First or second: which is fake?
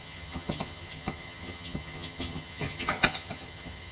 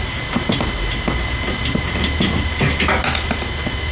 first